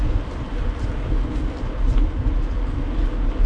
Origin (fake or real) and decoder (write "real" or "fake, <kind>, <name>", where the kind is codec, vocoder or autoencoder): real